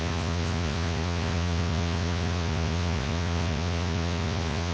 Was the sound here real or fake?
fake